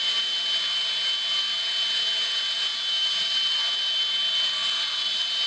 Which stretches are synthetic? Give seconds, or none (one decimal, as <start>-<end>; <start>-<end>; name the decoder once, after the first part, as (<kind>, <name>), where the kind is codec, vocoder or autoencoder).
none